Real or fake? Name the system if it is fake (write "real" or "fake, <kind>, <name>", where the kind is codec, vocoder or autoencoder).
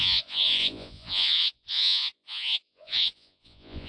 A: fake, vocoder, Vocos